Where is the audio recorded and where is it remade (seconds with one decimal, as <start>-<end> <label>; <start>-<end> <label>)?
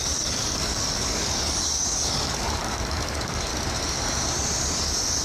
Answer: 0.0-3.5 remade; 3.5-5.2 recorded